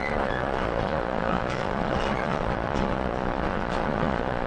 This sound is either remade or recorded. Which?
remade